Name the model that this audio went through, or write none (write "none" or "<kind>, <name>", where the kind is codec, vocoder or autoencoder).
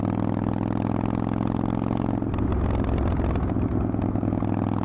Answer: none